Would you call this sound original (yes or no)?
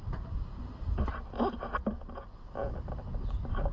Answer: yes